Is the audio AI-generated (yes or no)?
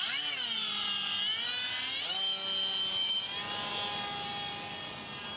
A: no